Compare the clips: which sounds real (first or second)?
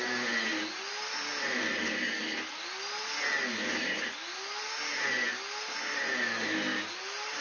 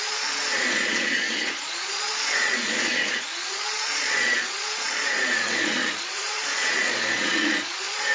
first